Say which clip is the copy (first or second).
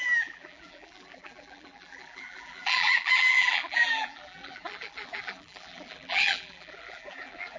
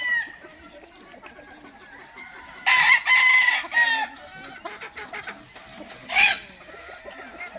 first